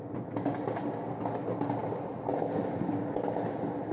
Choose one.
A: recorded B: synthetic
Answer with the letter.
A